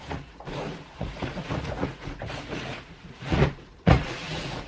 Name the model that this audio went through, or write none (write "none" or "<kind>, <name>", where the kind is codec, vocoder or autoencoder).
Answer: vocoder, Vocos